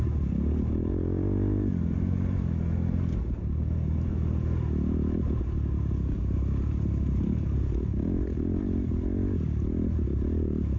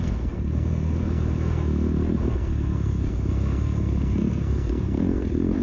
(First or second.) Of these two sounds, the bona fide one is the first